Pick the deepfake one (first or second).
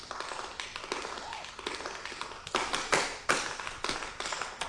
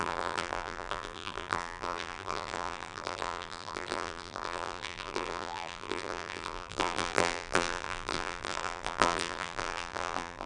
second